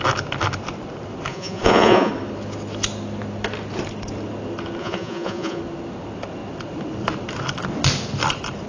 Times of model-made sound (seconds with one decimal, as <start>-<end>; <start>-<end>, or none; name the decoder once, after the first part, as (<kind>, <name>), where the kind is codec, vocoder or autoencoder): 1.3-2.1 (vocoder, Vocos); 4.8-5.6